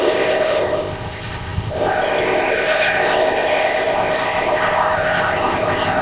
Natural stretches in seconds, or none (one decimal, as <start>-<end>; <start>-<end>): none